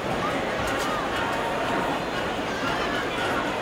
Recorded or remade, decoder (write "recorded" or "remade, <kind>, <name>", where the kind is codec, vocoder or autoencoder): remade, vocoder, BigVGAN v2